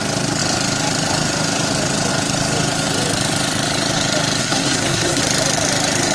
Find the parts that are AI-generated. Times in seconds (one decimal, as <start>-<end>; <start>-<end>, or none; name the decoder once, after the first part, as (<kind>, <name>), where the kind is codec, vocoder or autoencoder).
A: 4.4-5.2 (codec, SNAC)